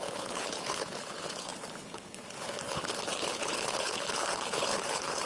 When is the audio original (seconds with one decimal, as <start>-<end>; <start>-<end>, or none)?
none